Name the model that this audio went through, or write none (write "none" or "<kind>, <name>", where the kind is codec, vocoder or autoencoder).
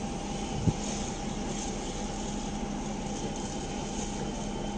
none